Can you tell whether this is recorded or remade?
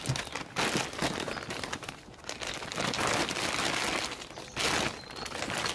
recorded